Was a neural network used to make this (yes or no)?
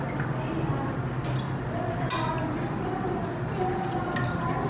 no